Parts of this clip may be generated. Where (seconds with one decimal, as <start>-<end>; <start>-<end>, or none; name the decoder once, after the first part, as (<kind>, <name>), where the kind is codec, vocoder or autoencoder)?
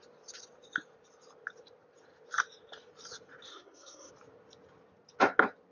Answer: 3.5-4.1 (codec, SNAC)